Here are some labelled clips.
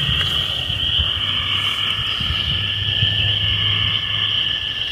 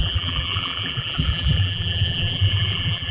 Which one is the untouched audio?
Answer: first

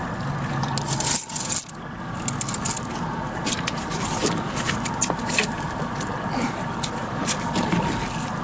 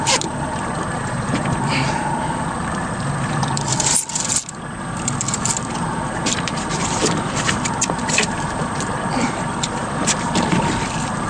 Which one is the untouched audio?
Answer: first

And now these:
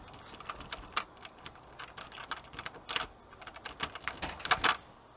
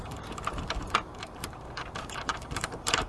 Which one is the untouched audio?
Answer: first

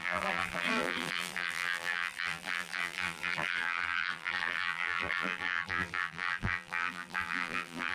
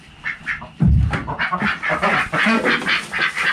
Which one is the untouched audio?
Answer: second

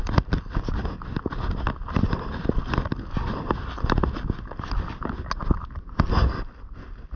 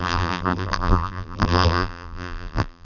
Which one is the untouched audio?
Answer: first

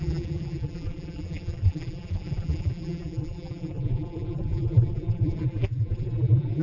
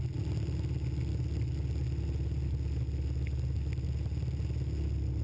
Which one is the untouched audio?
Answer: second